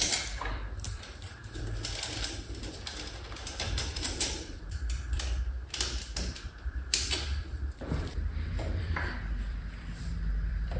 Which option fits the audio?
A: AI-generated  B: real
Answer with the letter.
A